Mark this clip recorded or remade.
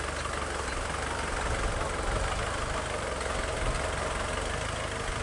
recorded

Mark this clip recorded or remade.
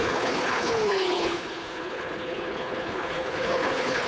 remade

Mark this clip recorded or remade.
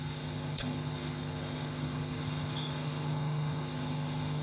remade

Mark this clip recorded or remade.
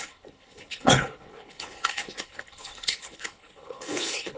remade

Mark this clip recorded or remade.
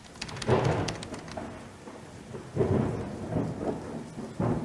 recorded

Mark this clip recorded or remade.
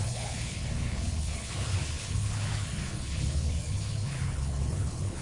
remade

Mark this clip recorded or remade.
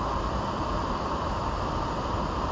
recorded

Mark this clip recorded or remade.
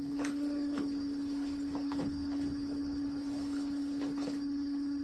remade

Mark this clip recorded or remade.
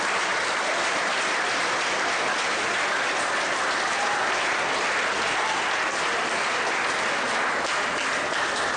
recorded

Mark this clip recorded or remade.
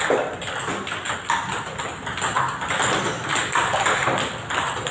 recorded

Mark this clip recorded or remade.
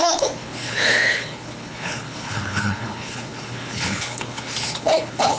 remade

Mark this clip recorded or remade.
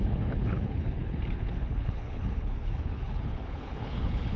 remade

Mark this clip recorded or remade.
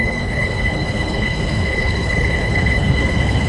remade